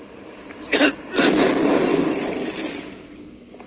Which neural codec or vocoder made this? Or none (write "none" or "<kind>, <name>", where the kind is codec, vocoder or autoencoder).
none